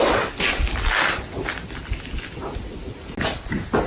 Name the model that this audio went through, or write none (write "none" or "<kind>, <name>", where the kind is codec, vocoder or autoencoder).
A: none